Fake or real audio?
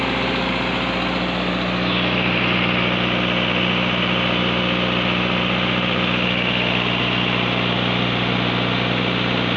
real